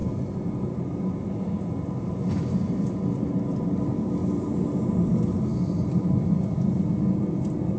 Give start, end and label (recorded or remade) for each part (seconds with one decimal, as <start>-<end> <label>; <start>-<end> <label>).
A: 0.0-7.8 recorded

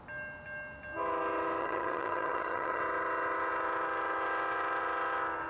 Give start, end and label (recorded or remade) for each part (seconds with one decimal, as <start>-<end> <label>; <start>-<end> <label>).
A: 0.0-1.6 recorded; 1.6-2.8 remade; 2.8-5.5 recorded

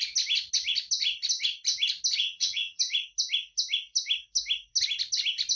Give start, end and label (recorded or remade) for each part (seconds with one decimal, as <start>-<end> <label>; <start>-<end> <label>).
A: 0.0-2.2 recorded; 2.2-2.8 remade; 2.8-5.6 recorded

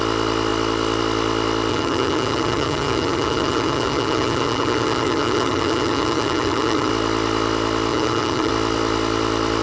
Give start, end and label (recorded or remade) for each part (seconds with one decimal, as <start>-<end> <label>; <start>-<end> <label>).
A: 0.0-1.7 recorded; 1.7-6.9 remade; 6.9-7.9 recorded; 7.9-8.5 remade; 8.5-9.6 recorded

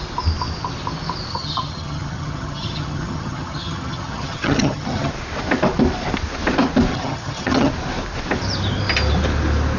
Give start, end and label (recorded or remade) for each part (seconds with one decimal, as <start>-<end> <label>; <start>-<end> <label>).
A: 0.0-1.3 recorded; 1.3-5.1 remade; 5.1-6.9 recorded; 6.9-7.7 remade; 7.7-9.8 recorded

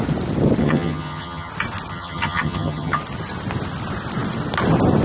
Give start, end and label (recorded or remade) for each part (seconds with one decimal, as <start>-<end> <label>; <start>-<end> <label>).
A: 0.0-0.6 recorded; 0.6-1.5 remade; 1.5-1.9 recorded; 1.9-3.0 remade; 3.0-5.0 recorded